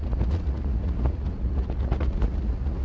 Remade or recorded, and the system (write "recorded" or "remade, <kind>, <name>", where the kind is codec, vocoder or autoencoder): remade, vocoder, Vocos